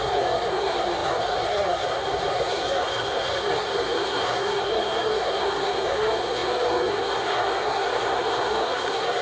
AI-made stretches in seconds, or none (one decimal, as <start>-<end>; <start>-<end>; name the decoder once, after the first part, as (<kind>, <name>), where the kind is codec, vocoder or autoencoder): 0.0-9.2 (codec, SNAC)